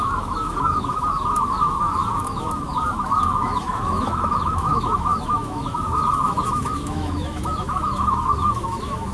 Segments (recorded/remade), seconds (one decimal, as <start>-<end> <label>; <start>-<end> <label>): 0.0-9.1 remade